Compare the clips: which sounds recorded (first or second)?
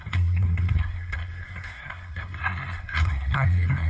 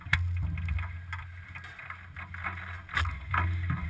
second